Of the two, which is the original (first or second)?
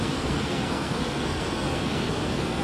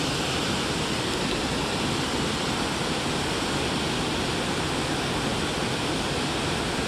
second